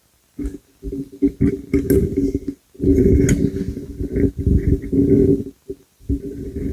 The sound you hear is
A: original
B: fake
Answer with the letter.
A